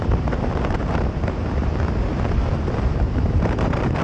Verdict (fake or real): fake